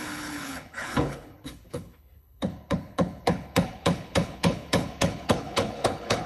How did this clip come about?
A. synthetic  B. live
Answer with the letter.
A